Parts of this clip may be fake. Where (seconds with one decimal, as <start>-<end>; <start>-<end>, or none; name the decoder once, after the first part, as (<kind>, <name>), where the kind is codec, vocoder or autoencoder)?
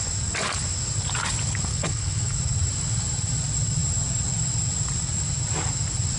1.7-2.4 (codec, HILCodec)